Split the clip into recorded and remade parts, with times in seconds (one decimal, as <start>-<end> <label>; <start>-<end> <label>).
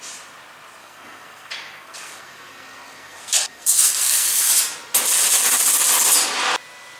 0.0-0.8 recorded; 0.8-4.5 remade; 4.5-7.0 recorded